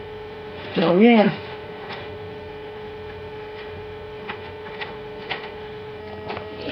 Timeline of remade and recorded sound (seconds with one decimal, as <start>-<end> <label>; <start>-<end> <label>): 0.0-6.0 remade; 6.0-6.7 recorded